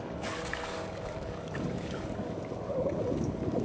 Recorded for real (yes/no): no